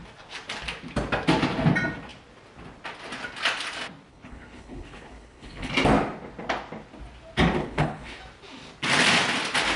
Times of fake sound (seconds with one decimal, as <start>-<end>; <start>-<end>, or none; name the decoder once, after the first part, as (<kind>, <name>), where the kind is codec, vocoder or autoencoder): 4.1-5.7 (codec, HILCodec); 7.6-8.2